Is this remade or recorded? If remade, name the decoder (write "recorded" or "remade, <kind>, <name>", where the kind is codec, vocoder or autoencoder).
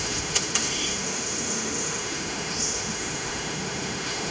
remade, autoencoder, DAC-VAE